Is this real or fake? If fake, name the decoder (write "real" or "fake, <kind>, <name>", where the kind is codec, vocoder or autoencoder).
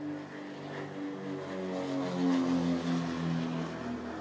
real